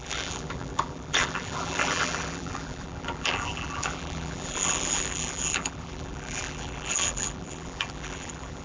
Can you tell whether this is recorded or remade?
remade